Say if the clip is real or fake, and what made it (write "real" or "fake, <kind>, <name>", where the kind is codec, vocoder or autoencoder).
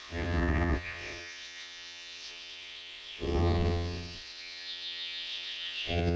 fake, vocoder, WaveNeXt